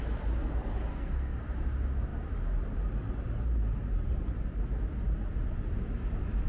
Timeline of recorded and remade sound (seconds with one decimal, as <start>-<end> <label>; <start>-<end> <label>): 0.0-0.9 recorded; 0.9-1.4 remade; 1.4-6.5 recorded